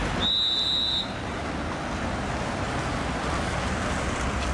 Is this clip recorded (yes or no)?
yes